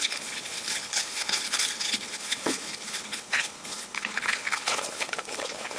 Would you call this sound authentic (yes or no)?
no